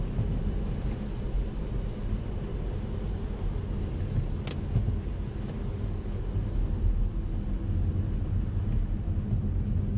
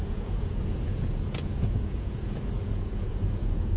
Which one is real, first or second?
first